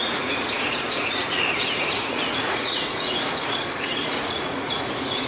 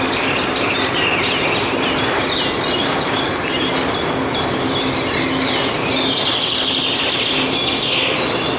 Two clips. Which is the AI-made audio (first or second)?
first